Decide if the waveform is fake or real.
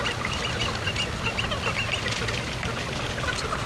real